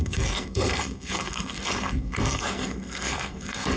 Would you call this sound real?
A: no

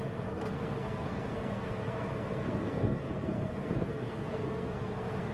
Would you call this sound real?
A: no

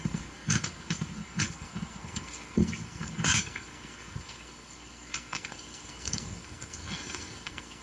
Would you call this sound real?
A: no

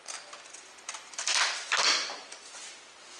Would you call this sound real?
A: yes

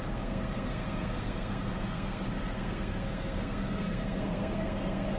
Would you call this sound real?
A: no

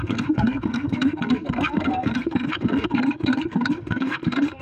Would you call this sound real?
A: no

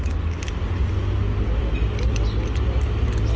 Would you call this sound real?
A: yes